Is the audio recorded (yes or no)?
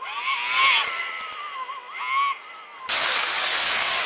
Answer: yes